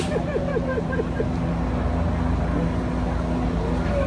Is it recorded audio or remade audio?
recorded